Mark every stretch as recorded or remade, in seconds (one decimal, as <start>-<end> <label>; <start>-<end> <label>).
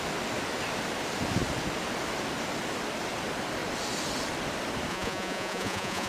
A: 0.0-4.9 recorded; 4.9-6.1 remade